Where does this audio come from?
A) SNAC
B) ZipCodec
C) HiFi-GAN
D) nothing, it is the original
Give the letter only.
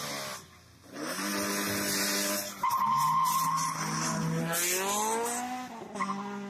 D